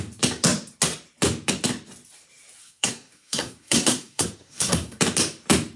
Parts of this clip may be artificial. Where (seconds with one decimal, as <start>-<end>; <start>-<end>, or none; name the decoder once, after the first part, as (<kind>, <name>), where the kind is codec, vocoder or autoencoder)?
2.6-5.0 (codec, SNAC)